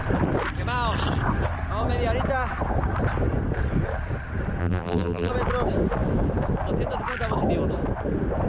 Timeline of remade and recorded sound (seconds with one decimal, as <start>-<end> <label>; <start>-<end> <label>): 0.0-4.6 recorded; 4.6-5.3 remade; 5.3-8.5 recorded